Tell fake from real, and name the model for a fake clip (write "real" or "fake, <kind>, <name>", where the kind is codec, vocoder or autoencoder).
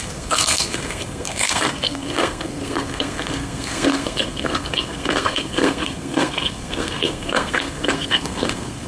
fake, codec, SNAC